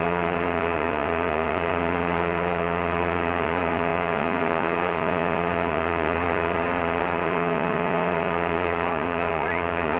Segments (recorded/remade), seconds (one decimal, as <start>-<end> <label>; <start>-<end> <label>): 0.0-10.0 remade